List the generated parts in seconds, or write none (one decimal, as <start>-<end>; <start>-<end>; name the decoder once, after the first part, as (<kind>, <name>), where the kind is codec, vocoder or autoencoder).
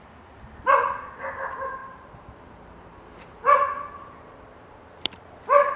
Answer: 1.8-5.3 (vocoder, BigVGAN v2)